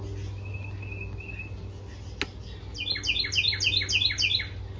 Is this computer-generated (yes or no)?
no